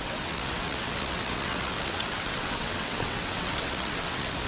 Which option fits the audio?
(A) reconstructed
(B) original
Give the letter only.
A